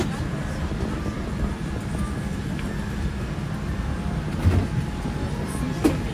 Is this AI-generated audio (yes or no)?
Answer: no